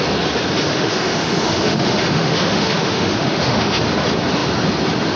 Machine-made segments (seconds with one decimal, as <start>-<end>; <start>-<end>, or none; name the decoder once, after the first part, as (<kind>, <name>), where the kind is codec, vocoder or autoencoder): 0.7-3.8 (autoencoder, DAC-VAE)